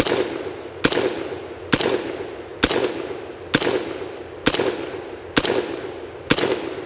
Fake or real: real